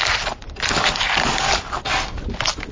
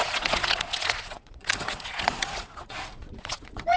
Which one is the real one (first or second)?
first